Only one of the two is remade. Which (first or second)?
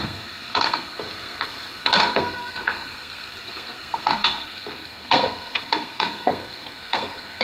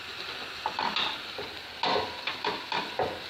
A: first